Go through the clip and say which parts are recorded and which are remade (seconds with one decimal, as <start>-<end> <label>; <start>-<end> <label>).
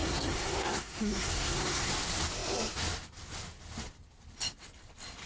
0.0-1.9 remade; 1.9-5.3 recorded